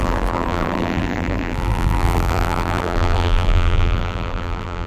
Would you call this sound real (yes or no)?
no